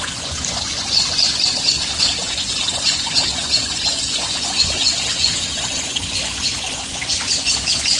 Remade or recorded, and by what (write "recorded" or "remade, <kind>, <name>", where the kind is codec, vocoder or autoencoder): remade, vocoder, Vocos